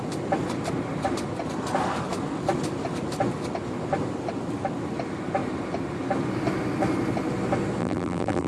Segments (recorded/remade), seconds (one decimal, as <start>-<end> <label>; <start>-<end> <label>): 0.0-7.8 recorded; 7.8-8.5 remade